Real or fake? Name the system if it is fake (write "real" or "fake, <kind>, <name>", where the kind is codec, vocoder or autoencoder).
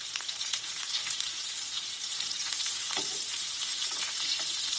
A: fake, vocoder, Vocos